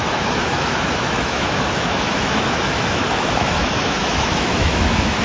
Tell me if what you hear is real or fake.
fake